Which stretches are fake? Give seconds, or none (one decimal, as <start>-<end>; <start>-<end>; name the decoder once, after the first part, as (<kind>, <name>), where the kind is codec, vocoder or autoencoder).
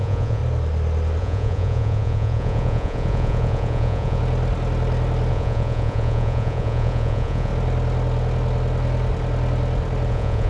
0.0-0.4 (vocoder, Vocos); 1.2-4.2; 5.3-7.5; 10.1-10.5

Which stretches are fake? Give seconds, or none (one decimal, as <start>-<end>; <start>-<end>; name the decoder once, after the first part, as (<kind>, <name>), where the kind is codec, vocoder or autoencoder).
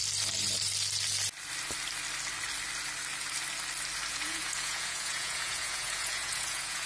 4.1-6.9 (vocoder, Vocos)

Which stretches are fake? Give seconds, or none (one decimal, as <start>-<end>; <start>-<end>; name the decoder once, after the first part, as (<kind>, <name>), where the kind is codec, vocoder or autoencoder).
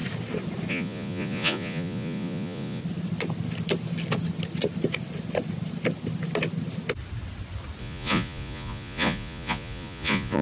0.7-2.8 (vocoder, Vocos); 7.8-10.4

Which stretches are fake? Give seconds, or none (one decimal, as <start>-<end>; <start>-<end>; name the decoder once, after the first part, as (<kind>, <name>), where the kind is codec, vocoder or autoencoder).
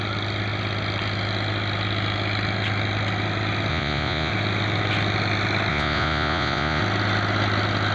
3.7-4.3 (vocoder, Vocos); 5.7-6.8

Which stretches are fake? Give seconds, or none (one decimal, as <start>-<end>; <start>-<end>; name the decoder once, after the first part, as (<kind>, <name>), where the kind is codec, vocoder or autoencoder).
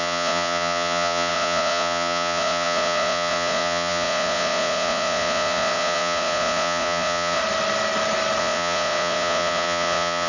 0.0-7.4 (vocoder, Vocos); 8.4-10.3